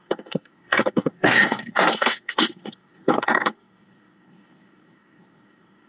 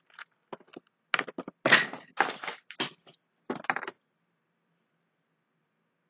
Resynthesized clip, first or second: first